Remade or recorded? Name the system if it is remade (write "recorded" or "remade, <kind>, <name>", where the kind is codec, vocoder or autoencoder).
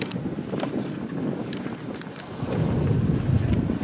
recorded